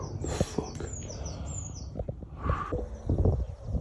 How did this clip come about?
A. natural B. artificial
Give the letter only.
B